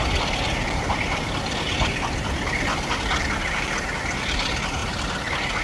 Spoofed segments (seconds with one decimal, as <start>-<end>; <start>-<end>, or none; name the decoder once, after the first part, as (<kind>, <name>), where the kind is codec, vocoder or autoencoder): none